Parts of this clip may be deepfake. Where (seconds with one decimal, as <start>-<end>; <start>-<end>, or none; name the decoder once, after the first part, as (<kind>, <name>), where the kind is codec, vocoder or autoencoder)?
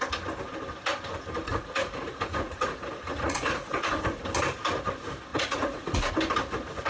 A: 1.5-4.2 (vocoder, Vocos); 5.3-6.1